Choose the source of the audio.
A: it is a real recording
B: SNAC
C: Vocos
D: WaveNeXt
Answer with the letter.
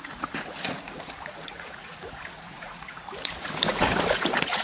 C